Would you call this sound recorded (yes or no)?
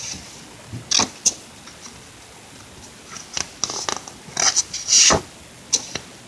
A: yes